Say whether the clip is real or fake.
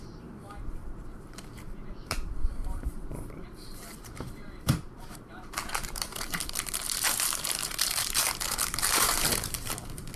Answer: fake